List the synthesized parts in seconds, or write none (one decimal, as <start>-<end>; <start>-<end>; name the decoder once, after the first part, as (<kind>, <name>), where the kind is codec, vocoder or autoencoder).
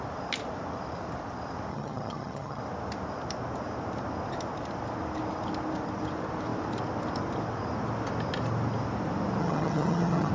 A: 1.7-2.6 (vocoder, HiFi-GAN); 9.4-10.3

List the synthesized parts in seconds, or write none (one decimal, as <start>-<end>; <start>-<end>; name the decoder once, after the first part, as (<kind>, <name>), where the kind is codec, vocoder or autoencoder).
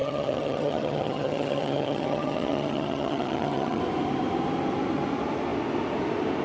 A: 0.0-3.8 (vocoder, HiFi-GAN)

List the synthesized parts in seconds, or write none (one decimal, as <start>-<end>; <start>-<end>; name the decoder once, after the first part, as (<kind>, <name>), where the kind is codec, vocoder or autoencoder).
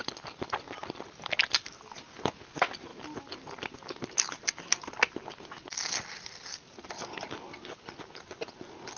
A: none